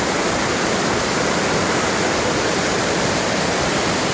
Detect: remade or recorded recorded